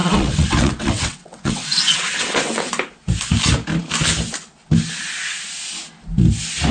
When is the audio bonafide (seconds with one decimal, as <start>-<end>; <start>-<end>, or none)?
2.7-6.7